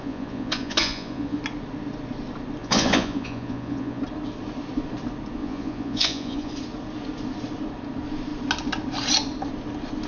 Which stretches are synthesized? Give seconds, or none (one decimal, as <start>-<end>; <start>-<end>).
0.0-1.4; 2.6-4.0; 5.4-6.5